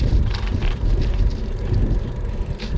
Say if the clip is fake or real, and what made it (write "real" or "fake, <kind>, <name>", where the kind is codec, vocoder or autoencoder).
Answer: fake, vocoder, BigVGAN v2